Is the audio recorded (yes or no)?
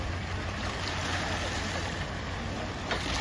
yes